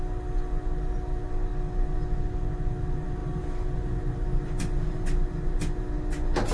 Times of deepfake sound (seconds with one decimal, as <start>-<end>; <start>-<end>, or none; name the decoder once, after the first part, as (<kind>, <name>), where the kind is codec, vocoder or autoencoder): none